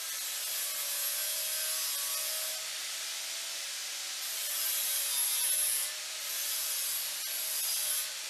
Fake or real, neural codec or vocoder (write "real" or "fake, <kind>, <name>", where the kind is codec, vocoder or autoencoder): real